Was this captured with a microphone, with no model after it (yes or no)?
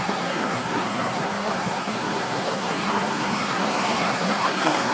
no